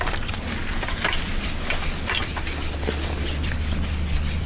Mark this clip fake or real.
real